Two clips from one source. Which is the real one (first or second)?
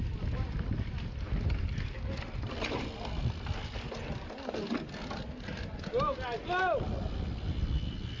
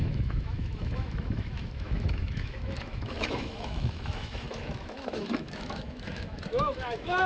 first